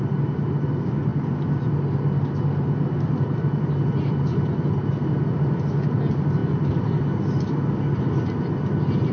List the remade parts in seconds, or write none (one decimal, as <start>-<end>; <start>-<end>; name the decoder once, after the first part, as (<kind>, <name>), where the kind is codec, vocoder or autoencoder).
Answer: none